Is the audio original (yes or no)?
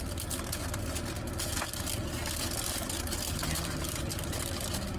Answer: yes